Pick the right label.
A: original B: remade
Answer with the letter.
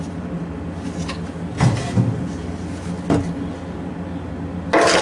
A